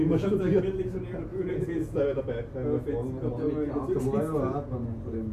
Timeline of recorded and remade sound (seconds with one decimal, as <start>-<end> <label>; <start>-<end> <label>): 0.0-0.6 remade; 0.6-1.3 recorded; 1.3-2.2 remade; 2.2-5.3 recorded